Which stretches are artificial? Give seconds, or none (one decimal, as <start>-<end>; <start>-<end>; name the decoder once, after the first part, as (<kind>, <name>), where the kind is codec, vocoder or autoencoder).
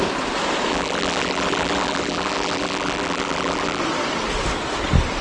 0.7-3.8 (vocoder, BigVGAN v2)